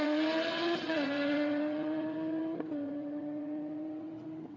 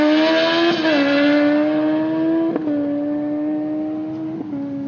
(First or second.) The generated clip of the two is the first